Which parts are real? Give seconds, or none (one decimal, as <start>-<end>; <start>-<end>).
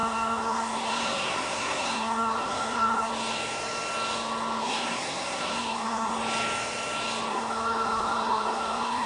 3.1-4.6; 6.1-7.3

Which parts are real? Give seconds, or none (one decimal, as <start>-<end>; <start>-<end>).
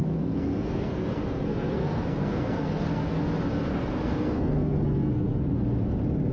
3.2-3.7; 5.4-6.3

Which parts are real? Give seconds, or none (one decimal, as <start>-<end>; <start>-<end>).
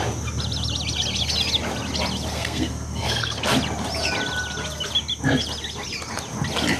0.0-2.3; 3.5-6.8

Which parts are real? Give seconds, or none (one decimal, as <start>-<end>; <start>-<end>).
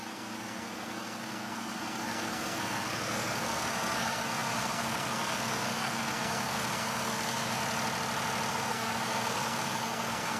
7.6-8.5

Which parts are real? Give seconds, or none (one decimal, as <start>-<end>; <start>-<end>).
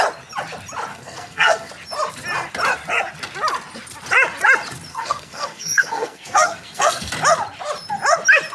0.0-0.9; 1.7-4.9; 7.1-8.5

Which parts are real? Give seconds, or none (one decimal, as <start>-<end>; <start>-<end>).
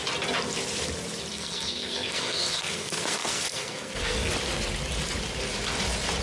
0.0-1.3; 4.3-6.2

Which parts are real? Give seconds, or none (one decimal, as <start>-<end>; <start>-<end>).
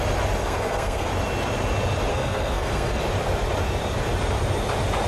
0.0-0.4; 1.1-2.1; 3.0-5.1